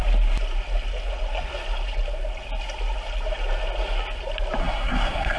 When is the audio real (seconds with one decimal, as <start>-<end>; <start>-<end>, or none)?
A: 0.0-4.6